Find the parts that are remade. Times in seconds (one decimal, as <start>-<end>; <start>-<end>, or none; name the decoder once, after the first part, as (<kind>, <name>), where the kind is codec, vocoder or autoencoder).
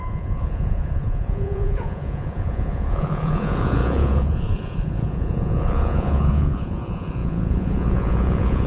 0.0-8.7 (vocoder, Vocos)